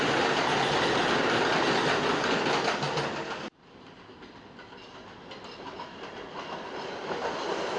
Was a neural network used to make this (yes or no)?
no